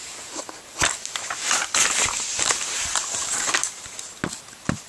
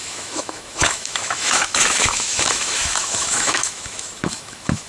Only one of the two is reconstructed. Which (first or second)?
second